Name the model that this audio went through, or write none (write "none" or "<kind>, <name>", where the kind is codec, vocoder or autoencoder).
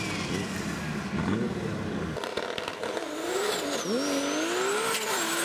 none